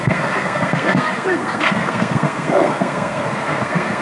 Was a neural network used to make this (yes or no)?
yes